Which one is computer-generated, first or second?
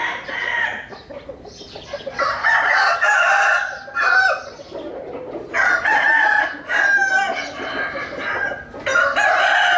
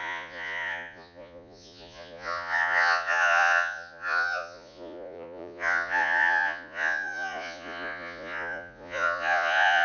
second